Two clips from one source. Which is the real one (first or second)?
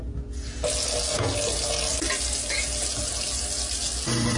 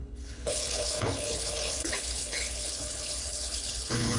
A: first